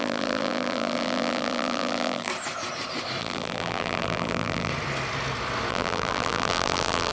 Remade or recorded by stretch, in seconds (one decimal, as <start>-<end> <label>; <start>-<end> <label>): 0.0-2.3 remade; 2.3-3.2 recorded; 3.2-4.7 remade; 4.7-5.7 recorded; 5.7-7.1 remade